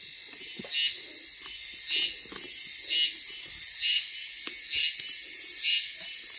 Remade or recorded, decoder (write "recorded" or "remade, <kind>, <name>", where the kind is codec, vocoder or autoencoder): recorded